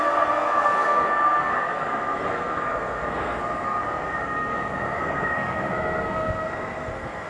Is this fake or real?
fake